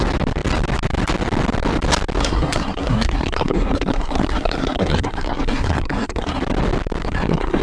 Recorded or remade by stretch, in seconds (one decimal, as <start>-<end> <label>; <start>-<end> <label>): 0.0-2.2 recorded; 2.2-6.4 remade; 6.4-7.0 recorded; 7.0-7.6 remade